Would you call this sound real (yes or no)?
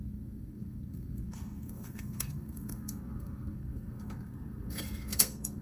no